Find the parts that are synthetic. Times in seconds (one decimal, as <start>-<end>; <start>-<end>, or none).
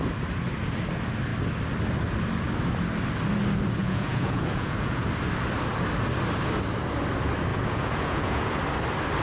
3.8-5.1; 7.5-8.6